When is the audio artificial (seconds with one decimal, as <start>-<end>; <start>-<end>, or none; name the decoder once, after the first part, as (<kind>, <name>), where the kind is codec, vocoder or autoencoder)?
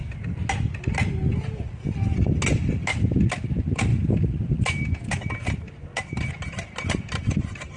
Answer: none